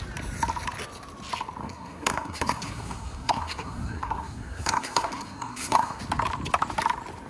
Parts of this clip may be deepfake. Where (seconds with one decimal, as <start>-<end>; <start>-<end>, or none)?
1.6-6.0